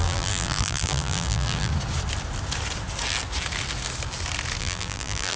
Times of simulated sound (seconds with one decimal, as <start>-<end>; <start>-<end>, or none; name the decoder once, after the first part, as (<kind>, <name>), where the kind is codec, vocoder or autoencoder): 0.0-1.7 (vocoder, BigVGAN v2); 4.6-5.4